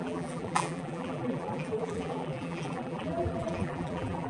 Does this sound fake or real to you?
fake